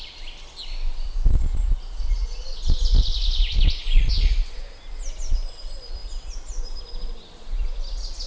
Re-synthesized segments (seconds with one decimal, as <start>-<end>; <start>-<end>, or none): none

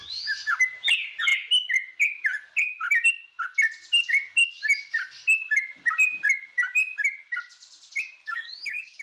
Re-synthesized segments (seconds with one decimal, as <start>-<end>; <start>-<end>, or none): 8.2-9.0

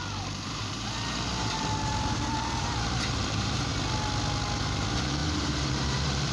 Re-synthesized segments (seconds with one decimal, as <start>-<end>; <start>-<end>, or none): 0.0-3.7; 4.6-6.3

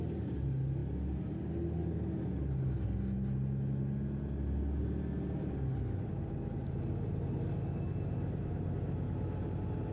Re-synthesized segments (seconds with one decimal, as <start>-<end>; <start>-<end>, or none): none

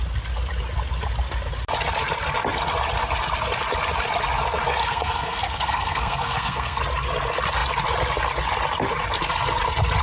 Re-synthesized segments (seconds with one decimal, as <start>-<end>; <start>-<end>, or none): 4.8-6.8